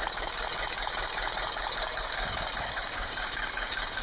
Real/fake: fake